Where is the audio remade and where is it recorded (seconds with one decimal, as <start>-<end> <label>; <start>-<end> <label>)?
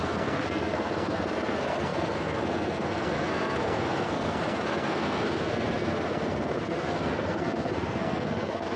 0.0-8.8 remade